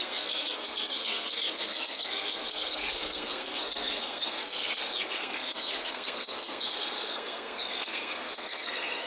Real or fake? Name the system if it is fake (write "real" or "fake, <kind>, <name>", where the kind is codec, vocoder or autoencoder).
fake, codec, SNAC